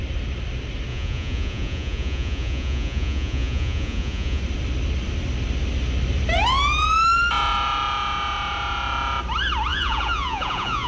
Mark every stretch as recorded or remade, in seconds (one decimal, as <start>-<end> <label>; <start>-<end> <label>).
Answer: 0.0-0.9 recorded; 0.9-4.4 remade; 4.4-9.7 recorded; 9.7-10.9 remade